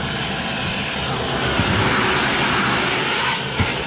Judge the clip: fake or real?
real